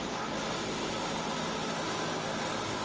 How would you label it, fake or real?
real